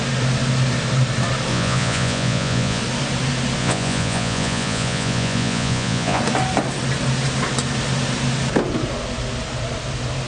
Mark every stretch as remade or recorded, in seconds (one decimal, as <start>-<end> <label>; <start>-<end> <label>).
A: 0.0-1.5 recorded; 1.5-2.8 remade; 2.8-3.6 recorded; 3.6-6.2 remade; 6.2-10.3 recorded